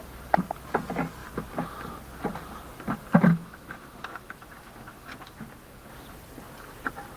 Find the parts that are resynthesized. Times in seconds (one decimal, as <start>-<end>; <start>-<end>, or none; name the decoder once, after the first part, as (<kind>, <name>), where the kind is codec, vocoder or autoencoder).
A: 3.3-5.9 (autoencoder, DAC-VAE)